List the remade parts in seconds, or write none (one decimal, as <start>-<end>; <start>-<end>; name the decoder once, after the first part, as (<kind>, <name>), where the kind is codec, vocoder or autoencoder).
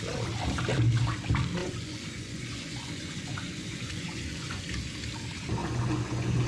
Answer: 1.6-4.6 (vocoder, Vocos); 5.6-6.5